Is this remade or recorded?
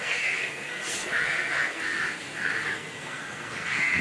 remade